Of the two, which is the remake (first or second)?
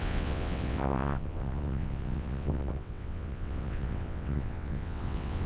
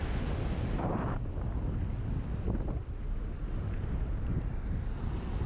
first